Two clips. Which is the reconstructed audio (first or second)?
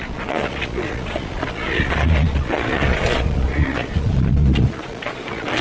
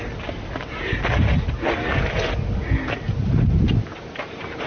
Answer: first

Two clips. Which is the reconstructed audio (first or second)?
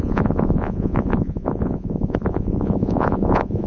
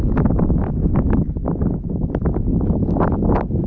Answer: first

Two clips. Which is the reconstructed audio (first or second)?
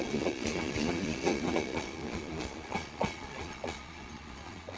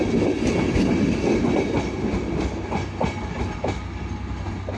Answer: first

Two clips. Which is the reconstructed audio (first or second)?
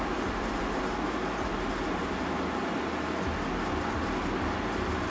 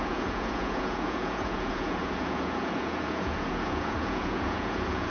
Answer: second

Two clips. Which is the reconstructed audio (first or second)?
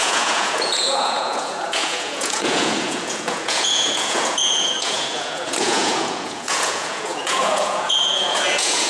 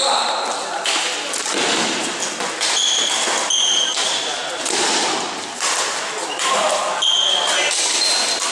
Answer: first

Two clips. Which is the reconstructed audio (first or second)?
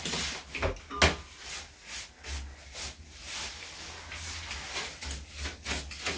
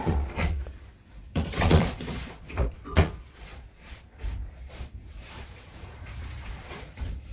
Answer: second